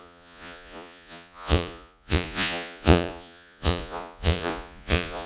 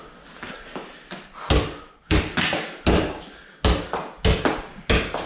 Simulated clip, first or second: first